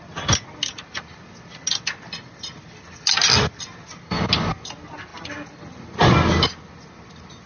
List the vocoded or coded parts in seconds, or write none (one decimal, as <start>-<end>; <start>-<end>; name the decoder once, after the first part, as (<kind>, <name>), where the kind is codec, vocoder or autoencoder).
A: none

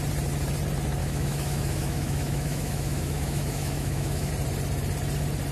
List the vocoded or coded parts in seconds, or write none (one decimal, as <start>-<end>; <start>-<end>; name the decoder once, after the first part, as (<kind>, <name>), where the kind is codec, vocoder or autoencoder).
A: 1.0-4.3 (autoencoder, DAC-VAE)

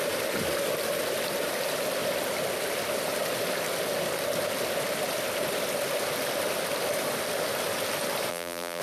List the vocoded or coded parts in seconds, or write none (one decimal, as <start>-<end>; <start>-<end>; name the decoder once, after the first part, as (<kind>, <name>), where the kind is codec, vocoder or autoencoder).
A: 8.3-8.8 (vocoder, BigVGAN v2)

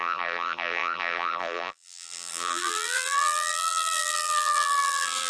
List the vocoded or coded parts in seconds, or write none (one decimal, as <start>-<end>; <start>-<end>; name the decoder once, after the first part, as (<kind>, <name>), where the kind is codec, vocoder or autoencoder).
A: 0.0-5.3 (vocoder, BigVGAN v2)